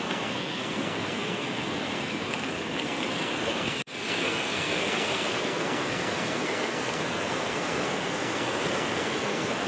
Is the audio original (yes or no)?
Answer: no